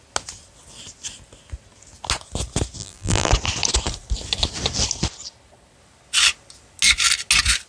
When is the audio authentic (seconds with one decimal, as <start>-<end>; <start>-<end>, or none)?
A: 0.0-2.8; 3.3-7.7